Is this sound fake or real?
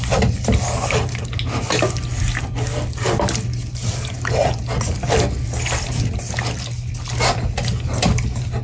real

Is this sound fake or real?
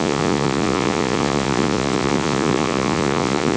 fake